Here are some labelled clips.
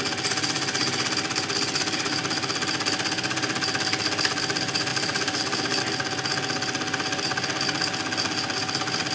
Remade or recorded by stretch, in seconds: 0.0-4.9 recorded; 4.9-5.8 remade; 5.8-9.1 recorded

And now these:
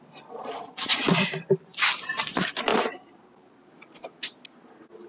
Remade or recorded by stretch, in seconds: 0.0-1.7 recorded; 1.7-2.2 remade; 2.2-2.7 recorded; 2.7-3.7 remade; 3.7-5.1 recorded

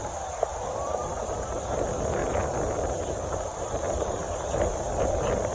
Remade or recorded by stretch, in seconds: 0.0-2.2 recorded; 2.2-2.8 remade; 2.8-5.5 recorded